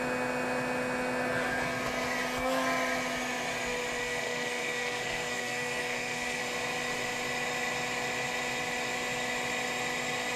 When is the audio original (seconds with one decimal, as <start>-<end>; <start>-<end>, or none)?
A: 0.0-4.0; 6.4-10.4